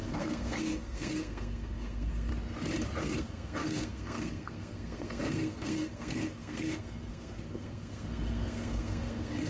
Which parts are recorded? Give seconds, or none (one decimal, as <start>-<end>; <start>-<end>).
2.3-3.0